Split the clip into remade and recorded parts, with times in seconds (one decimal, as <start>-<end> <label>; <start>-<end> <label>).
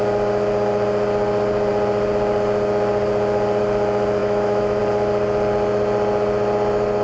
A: 0.0-4.2 recorded; 4.2-4.8 remade; 4.8-7.0 recorded